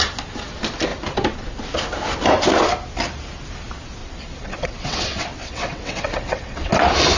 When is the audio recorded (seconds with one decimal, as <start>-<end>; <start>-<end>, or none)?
0.0-4.0; 6.7-7.2